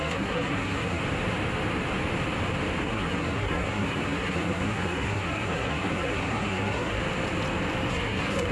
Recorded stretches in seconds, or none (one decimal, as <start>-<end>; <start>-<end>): 1.0-2.8; 7.0-7.9